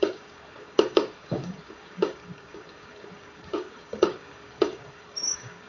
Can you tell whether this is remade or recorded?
remade